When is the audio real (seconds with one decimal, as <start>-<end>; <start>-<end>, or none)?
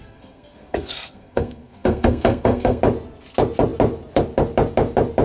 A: 2.8-5.2